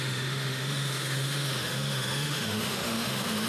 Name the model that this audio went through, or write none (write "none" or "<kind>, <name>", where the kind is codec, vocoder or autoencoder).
autoencoder, DAC-VAE